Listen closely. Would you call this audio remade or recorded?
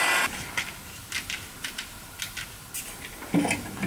recorded